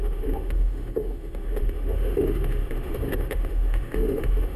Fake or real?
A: fake